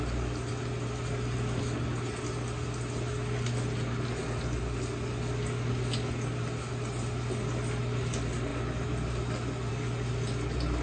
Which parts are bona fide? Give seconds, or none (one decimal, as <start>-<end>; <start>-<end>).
0.0-10.8